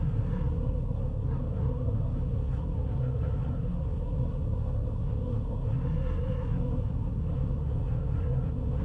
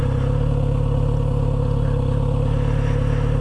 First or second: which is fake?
first